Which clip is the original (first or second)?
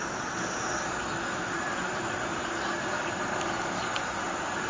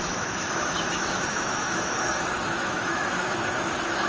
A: first